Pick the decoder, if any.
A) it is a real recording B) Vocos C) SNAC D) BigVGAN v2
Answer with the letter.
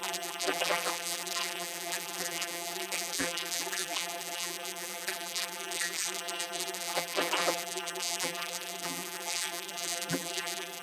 D